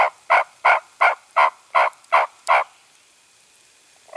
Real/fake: real